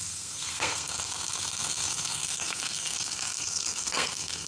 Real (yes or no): no